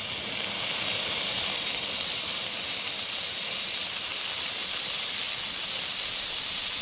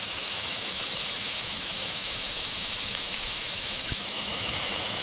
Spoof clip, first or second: second